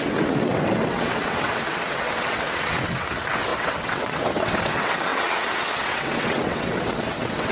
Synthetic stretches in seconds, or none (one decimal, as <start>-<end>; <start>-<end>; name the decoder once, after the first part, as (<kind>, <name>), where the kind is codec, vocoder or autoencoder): 0.0-7.5 (vocoder, WaveNeXt)